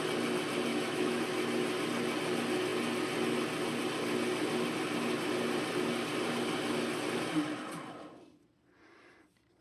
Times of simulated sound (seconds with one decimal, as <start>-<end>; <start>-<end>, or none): 0.7-1.2